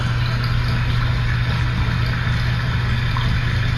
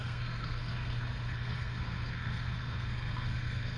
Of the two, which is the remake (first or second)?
second